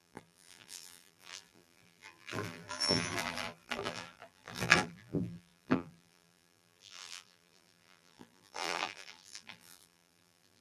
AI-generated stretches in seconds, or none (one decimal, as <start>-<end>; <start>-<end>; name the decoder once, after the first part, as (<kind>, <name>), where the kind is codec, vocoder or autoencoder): 0.0-10.6 (vocoder, BigVGAN v2)